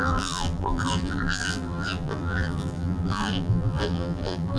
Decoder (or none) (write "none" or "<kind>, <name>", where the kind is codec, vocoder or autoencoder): vocoder, BigVGAN v2